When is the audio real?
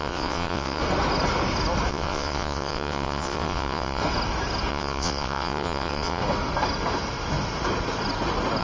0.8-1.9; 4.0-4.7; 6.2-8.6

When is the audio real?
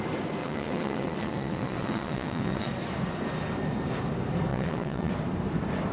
0.0-0.4; 2.7-4.5; 5.1-5.9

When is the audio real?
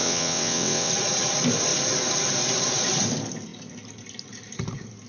0.9-5.1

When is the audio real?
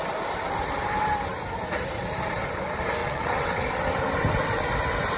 0.0-3.0; 3.6-5.2